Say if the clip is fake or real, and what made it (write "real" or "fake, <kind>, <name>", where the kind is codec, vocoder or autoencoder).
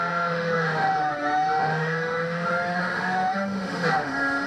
fake, autoencoder, DAC-VAE